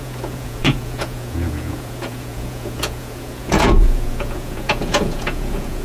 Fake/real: fake